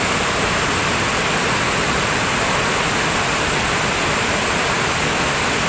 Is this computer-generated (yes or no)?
no